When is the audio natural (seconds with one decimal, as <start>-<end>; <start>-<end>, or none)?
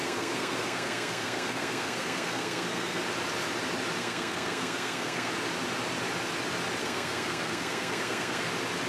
3.0-4.0; 5.3-6.8; 8.5-8.9